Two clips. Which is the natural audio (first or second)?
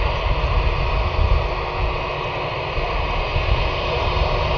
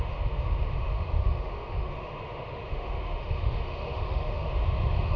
first